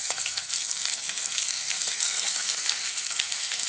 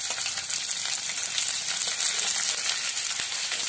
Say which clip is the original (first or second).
second